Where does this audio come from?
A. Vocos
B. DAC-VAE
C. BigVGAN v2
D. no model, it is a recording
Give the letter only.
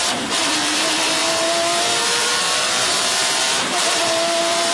C